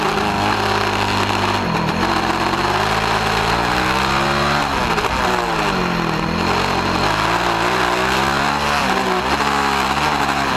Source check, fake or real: real